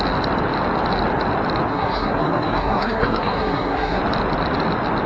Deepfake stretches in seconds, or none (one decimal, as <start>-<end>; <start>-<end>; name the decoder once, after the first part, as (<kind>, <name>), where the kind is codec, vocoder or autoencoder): 1.7-4.0 (codec, SNAC)